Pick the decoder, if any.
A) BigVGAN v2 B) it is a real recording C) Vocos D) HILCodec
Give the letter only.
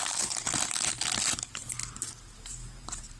B